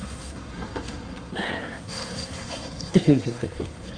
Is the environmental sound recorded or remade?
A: remade